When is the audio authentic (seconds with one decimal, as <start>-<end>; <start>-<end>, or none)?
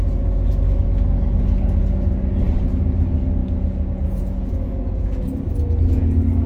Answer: 0.0-3.4; 5.2-6.5